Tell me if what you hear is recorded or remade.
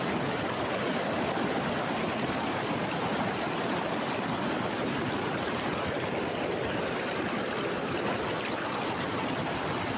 recorded